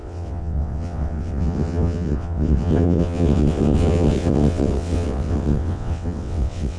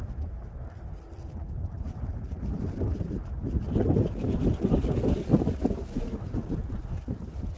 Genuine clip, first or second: second